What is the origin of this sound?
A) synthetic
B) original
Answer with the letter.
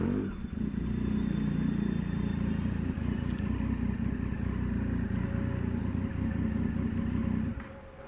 B